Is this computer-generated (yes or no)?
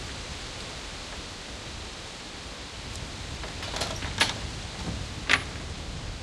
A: no